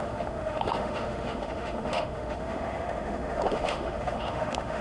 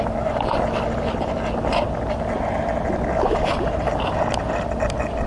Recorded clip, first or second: second